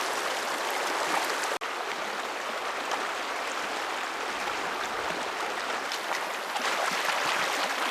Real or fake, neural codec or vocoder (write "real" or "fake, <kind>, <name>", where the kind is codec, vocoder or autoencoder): real